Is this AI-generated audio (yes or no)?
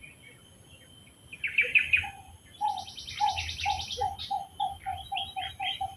no